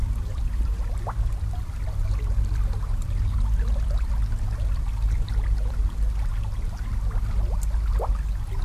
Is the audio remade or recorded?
recorded